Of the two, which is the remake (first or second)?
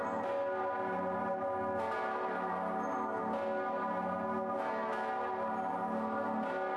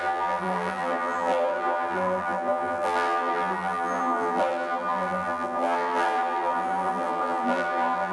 second